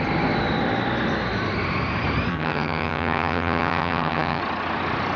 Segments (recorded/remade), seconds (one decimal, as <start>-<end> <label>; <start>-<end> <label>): 0.0-2.3 recorded; 2.3-4.4 remade; 4.4-5.2 recorded